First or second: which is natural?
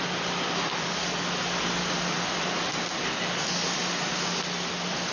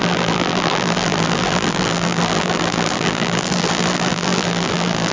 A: first